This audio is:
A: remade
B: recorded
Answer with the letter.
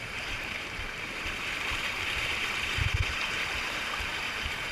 A